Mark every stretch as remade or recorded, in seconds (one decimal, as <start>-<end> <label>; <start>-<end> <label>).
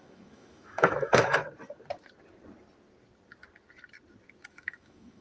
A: 0.0-1.4 remade; 1.4-4.5 recorded; 4.5-5.2 remade